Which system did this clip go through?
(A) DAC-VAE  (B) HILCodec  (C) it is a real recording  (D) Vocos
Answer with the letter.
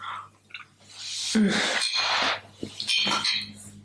C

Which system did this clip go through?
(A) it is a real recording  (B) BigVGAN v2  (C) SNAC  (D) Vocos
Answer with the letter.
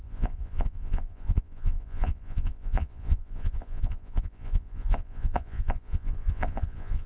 D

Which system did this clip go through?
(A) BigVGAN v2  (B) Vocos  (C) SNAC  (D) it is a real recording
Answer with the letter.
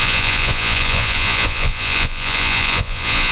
B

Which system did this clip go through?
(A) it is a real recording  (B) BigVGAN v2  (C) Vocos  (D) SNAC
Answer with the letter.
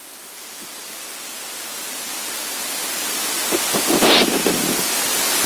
A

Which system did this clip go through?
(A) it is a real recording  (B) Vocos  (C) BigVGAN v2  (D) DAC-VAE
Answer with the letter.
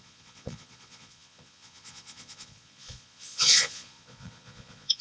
B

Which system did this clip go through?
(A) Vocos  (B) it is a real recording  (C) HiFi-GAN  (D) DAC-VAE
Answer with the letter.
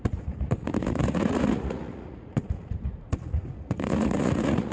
A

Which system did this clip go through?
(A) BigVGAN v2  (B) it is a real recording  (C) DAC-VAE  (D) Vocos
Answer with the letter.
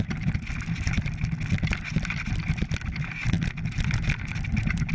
B